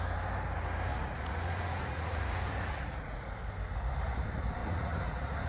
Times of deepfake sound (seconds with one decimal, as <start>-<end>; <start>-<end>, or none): 0.9-3.3; 4.6-5.5